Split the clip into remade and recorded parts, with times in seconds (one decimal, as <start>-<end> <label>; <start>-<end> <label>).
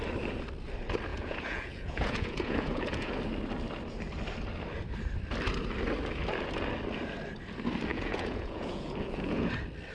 0.0-1.1 recorded; 1.1-3.1 remade; 3.1-7.9 recorded; 7.9-9.5 remade; 9.5-9.9 recorded